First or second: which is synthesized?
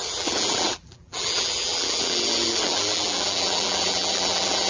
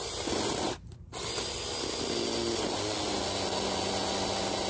first